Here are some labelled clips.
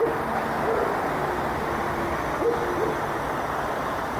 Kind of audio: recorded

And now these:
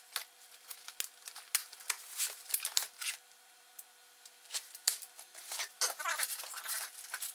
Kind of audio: recorded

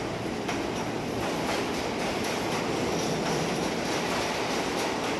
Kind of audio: recorded